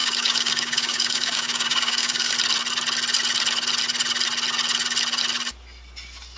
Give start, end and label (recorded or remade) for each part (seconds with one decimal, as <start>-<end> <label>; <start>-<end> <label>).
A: 0.0-2.3 remade; 2.3-6.4 recorded